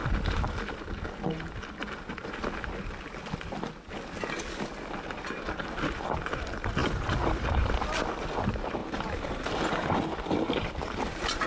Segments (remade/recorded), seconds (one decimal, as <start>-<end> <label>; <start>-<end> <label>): 0.0-1.8 recorded; 1.8-2.4 remade; 2.4-6.8 recorded; 6.8-7.5 remade; 7.5-8.8 recorded; 8.8-11.0 remade; 11.0-11.5 recorded